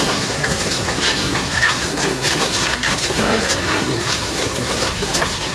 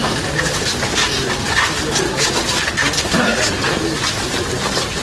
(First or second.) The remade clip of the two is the first